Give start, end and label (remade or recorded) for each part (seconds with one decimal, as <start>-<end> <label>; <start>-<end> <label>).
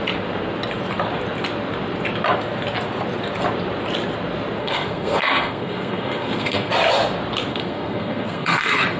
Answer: 0.0-4.6 recorded; 4.6-6.7 remade; 6.7-7.5 recorded; 7.5-9.0 remade